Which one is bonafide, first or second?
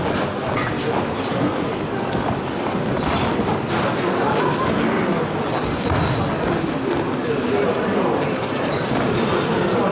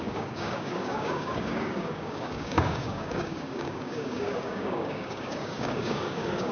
first